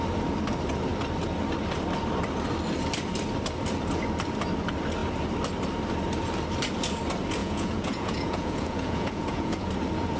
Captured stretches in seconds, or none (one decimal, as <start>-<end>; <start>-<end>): 0.0-7.4; 9.7-10.2